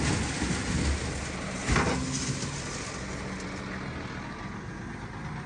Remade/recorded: recorded